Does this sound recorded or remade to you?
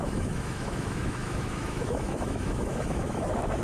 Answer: remade